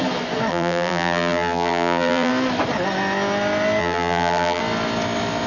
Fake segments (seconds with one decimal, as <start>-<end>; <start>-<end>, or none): 0.5-2.3; 3.8-4.6